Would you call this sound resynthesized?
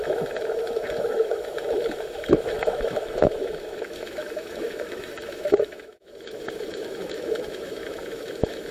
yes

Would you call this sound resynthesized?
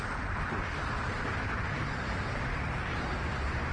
yes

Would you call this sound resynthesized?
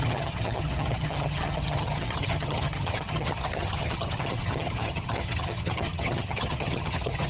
yes